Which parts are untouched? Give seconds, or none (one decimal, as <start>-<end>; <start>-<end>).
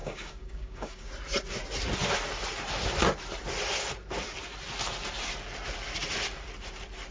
1.1-7.1